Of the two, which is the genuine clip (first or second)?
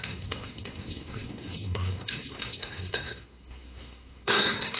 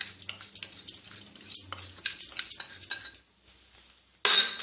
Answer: second